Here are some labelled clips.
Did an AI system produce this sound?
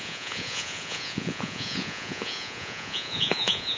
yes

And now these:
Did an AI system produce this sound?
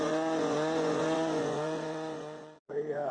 yes